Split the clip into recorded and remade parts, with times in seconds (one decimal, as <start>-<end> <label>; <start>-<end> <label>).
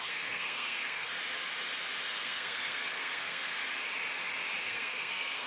0.0-1.1 remade; 1.1-2.1 recorded; 2.1-3.6 remade; 3.6-4.6 recorded; 4.6-5.5 remade